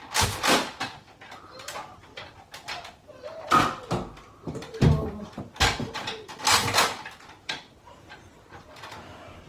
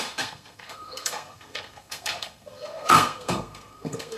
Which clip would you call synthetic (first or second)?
second